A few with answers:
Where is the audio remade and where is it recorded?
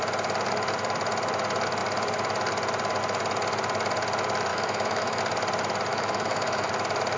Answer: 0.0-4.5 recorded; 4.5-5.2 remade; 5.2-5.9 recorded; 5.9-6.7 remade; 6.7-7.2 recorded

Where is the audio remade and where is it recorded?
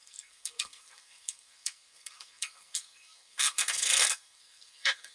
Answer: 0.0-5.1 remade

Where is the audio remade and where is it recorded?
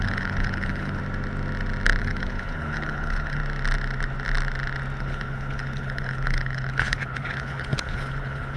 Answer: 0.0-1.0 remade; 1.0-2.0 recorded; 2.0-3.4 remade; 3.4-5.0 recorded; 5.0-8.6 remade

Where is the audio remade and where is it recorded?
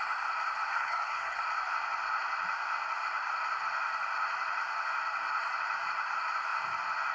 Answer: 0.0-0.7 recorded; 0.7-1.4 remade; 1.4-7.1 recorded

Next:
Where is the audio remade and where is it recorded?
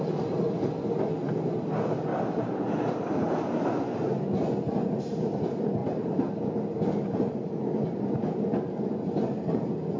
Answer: 0.0-2.1 recorded; 2.1-2.7 remade; 2.7-5.8 recorded; 5.8-6.3 remade; 6.3-10.0 recorded